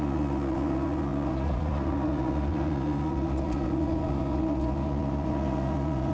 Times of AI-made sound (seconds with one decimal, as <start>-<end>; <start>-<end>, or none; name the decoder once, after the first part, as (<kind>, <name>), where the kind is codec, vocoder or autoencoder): 0.0-6.1 (vocoder, Vocos)